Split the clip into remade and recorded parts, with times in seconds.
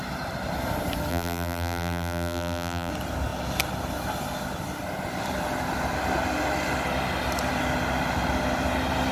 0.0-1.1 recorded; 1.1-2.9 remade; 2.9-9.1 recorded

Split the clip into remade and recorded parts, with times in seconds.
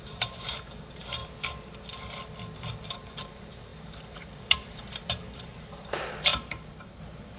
0.0-1.2 remade; 1.2-2.7 recorded; 2.7-7.4 remade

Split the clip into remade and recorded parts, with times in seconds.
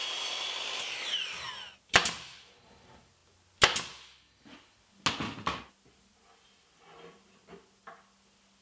0.0-2.6 remade; 2.6-8.6 recorded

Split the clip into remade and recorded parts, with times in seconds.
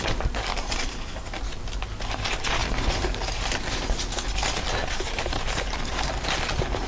0.0-0.5 recorded; 0.5-1.4 remade; 1.4-2.6 recorded; 2.6-3.3 remade; 3.3-4.8 recorded; 4.8-5.9 remade; 5.9-6.9 recorded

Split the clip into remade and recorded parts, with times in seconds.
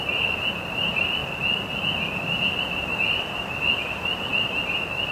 0.0-4.3 remade; 4.3-5.1 recorded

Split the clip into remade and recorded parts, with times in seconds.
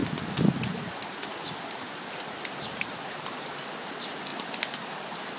0.0-5.4 recorded